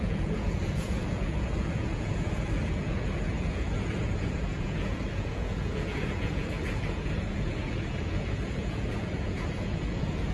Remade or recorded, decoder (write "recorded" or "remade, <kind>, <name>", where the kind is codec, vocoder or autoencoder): remade, vocoder, Vocos